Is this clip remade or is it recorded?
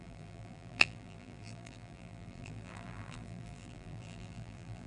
remade